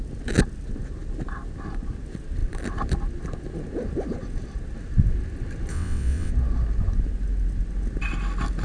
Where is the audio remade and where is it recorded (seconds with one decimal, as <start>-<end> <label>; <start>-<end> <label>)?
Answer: 0.0-5.7 recorded; 5.7-6.3 remade; 6.3-8.6 recorded